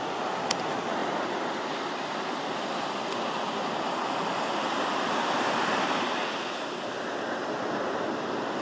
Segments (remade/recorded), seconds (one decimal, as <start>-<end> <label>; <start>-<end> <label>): 0.0-1.0 recorded; 1.0-5.7 remade; 5.7-8.6 recorded